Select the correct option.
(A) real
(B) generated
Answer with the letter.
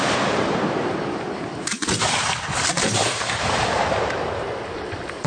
B